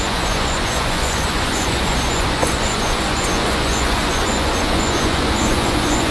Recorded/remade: remade